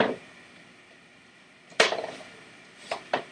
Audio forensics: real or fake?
fake